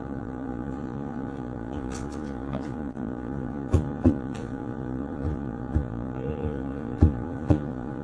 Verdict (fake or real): fake